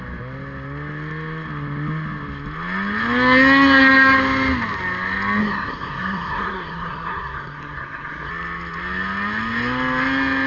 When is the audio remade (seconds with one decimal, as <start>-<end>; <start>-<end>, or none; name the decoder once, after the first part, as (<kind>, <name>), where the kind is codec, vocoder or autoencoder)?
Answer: 5.4-8.3 (codec, SNAC)